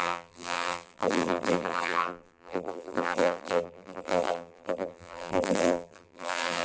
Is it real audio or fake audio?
fake